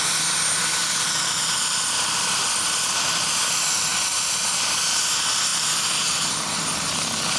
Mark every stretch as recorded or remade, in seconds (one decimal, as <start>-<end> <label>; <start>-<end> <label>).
0.0-0.8 recorded; 0.8-3.3 remade; 3.3-3.9 recorded; 3.9-4.7 remade; 4.7-5.5 recorded; 5.5-6.3 remade; 6.3-7.4 recorded